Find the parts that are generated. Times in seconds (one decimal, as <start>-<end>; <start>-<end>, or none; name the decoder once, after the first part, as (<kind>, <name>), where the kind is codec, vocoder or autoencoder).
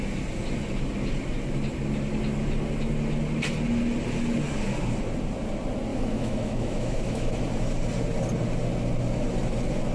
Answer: 5.9-7.4 (autoencoder, DAC-VAE)